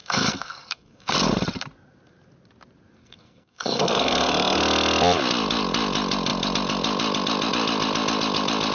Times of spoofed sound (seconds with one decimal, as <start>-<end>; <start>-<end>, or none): 0.0-1.1; 3.0-4.6

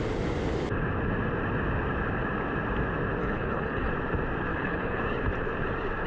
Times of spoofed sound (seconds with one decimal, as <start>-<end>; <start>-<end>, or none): 3.2-3.9; 4.5-5.0

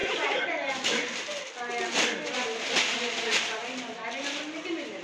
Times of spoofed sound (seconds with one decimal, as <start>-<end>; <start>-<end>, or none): none

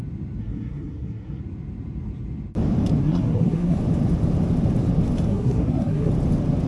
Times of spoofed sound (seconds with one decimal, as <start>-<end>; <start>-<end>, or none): 0.4-1.4; 3.0-3.8; 5.3-6.1

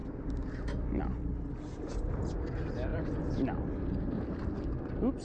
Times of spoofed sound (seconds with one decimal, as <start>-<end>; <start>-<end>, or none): none

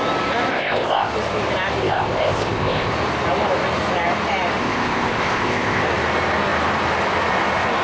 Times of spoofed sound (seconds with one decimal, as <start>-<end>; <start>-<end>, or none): 0.5-1.1; 1.8-2.9; 4.6-5.8

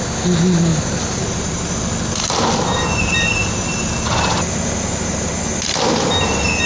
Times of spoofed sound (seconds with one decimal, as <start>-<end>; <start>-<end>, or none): 0.7-1.8; 3.1-5.3